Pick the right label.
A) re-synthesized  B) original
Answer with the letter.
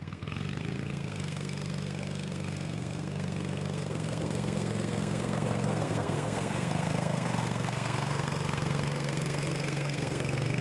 A